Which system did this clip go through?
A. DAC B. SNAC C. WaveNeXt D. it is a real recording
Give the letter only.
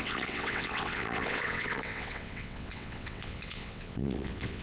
C